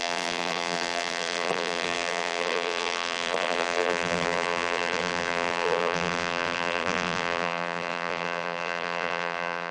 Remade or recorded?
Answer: remade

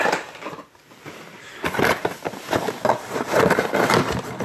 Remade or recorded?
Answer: recorded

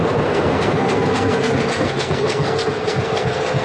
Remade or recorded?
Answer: remade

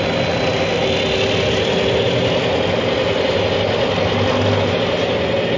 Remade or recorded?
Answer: recorded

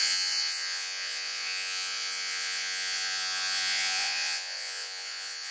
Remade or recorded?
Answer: remade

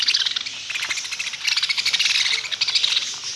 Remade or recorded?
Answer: recorded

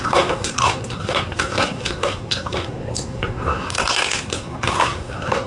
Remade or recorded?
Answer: remade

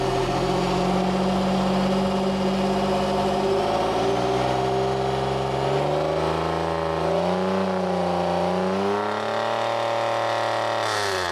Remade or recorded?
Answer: recorded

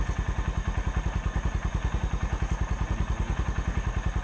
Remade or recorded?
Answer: recorded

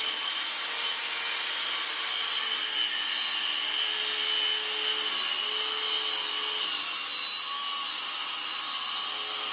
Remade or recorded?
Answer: recorded